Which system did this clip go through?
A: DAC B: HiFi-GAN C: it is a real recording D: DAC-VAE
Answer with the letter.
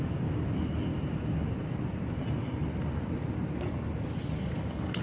C